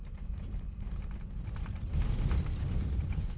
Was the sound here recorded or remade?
recorded